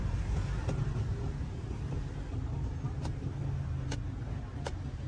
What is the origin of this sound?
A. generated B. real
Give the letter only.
B